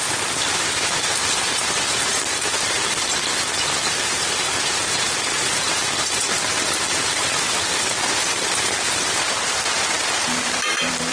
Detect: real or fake fake